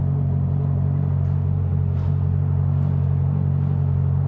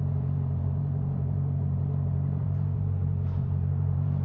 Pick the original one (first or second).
first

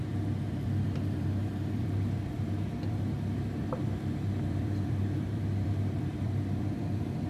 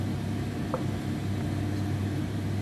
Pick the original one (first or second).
second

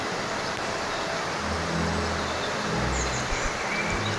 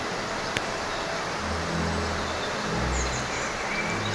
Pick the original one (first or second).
second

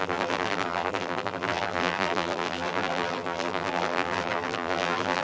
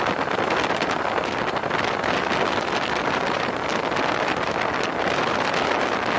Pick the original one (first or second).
second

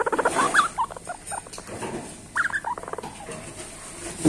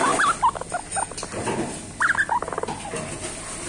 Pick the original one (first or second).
second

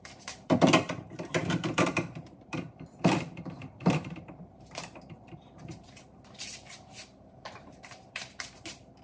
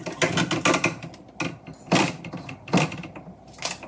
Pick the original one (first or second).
second